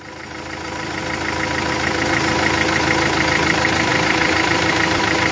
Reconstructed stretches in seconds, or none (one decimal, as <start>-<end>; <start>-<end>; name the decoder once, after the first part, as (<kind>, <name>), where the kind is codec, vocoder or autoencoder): 3.9-4.7 (vocoder, BigVGAN v2)